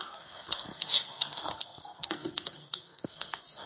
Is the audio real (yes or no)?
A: no